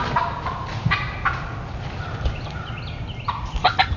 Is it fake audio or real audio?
real